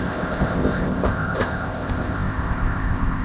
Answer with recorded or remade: remade